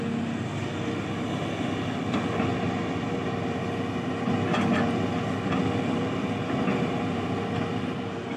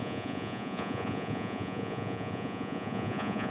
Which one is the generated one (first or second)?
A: second